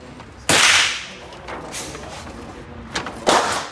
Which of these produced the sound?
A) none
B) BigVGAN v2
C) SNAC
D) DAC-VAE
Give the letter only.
A